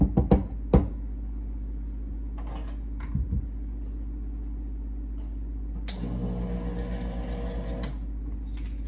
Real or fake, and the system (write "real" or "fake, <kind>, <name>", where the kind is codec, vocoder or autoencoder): real